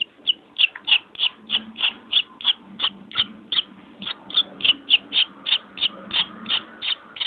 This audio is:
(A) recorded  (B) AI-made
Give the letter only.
A